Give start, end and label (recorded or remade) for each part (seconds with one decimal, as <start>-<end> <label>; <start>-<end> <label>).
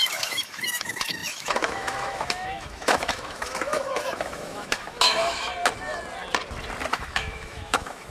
0.0-5.5 remade; 5.5-6.9 recorded; 6.9-8.1 remade